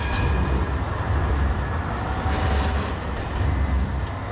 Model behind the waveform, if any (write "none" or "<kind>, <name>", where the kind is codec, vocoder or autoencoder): none